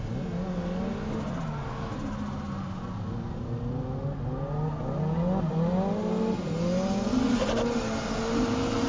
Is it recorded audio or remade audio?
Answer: recorded